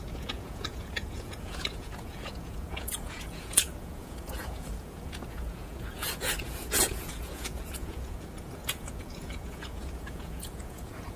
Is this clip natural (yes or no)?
no